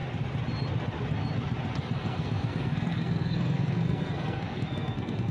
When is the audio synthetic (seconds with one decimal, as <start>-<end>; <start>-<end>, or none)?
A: 2.0-5.3